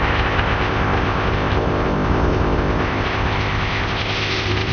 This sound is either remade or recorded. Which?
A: remade